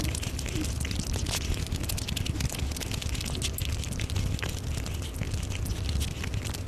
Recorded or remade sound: recorded